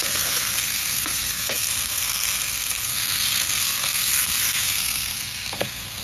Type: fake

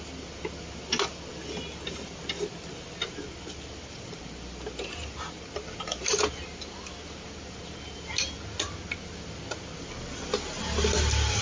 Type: real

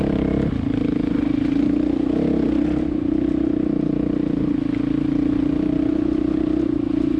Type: real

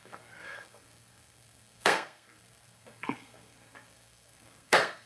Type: fake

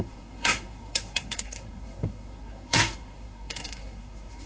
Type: fake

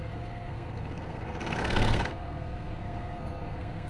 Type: fake